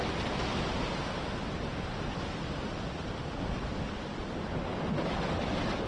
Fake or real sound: real